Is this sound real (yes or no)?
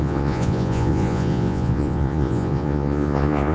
no